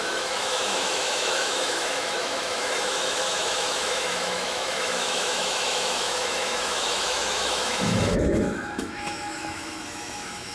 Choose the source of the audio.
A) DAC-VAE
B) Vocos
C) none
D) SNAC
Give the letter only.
A